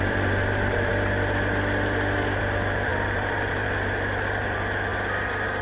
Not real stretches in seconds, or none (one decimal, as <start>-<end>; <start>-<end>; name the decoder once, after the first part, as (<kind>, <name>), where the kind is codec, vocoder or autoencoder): 0.0-0.9 (vocoder, BigVGAN v2); 2.4-4.9